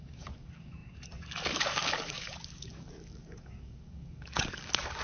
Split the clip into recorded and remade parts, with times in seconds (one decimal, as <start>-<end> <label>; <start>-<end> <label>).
0.0-5.0 remade